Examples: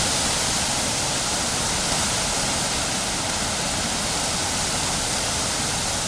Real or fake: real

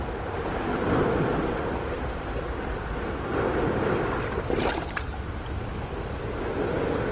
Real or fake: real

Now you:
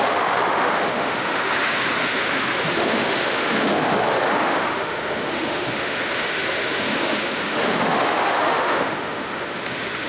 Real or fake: fake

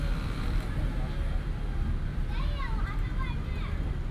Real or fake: real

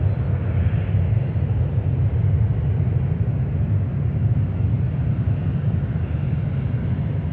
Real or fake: real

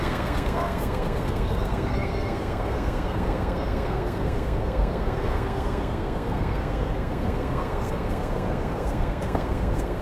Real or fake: fake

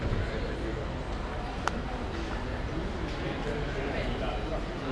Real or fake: real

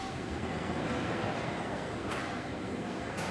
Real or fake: fake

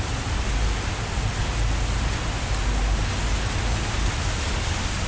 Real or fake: real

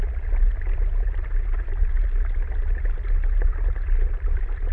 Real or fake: real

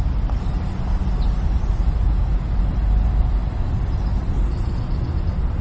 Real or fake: real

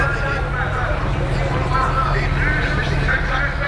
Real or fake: real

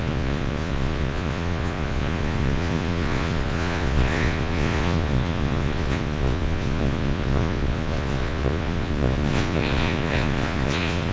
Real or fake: fake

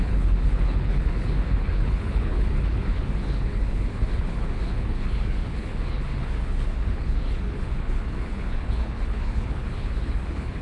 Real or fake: fake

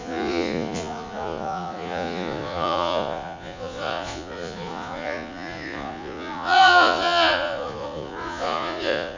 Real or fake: fake